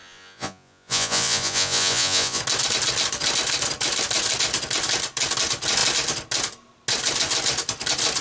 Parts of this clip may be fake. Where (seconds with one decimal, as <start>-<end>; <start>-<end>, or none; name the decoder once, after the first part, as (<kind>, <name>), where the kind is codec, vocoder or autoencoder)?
0.0-2.4 (vocoder, Vocos)